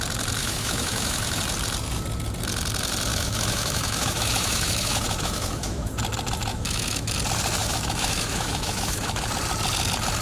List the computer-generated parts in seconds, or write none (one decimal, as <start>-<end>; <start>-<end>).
0.4-1.4; 3.1-5.9; 6.5-7.1; 7.6-9.3